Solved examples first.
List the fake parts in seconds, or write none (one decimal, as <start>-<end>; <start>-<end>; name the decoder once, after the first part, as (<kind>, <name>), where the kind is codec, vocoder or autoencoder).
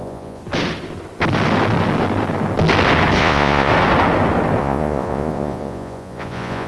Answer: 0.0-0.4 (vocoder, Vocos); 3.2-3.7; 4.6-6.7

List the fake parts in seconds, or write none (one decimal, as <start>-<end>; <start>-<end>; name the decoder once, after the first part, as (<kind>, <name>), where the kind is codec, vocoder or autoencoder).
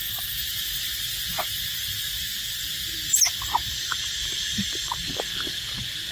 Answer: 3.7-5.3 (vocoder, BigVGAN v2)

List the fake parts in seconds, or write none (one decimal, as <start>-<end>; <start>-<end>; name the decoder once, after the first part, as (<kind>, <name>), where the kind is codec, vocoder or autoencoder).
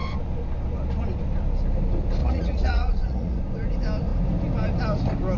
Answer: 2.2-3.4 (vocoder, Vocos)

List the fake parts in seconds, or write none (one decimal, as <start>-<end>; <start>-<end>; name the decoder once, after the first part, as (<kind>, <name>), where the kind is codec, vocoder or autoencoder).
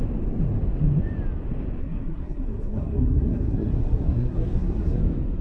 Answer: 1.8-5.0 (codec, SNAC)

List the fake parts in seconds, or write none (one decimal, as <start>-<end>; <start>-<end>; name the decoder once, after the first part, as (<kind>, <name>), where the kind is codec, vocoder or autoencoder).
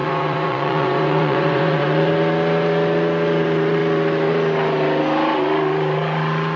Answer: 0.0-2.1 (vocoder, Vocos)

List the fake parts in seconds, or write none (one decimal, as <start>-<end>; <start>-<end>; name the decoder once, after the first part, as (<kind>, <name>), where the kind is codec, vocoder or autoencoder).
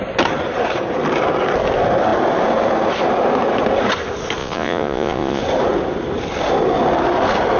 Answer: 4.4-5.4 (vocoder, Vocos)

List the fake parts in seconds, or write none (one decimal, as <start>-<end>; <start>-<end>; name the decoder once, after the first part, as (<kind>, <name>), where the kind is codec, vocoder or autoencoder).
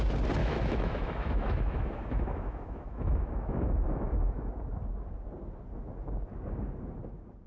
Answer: 0.4-4.5 (autoencoder, DAC-VAE)